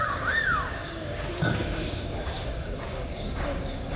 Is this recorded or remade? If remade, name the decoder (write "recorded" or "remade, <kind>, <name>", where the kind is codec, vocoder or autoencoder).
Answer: remade, codec, DAC